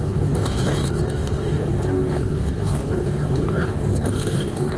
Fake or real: fake